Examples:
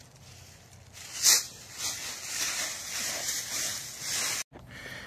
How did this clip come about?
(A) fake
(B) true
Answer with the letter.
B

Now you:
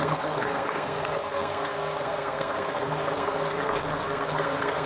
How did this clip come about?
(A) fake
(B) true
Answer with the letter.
A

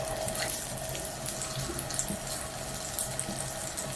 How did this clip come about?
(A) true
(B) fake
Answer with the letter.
A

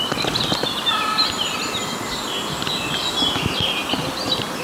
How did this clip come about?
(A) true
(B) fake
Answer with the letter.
A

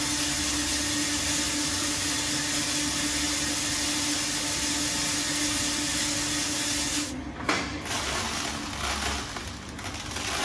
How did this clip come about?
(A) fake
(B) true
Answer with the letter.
B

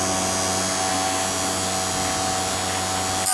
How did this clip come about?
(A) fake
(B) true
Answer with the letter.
B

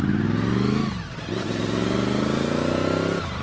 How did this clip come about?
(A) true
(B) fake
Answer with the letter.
A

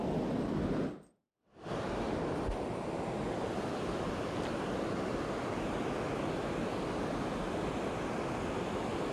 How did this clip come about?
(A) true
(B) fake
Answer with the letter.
A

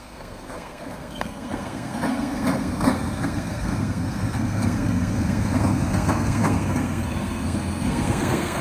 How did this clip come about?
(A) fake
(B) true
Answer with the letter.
A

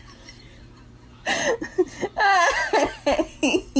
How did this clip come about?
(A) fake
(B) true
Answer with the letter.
B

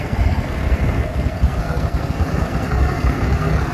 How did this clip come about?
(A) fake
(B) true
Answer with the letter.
A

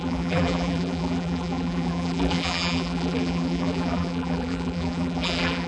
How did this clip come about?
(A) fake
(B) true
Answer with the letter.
A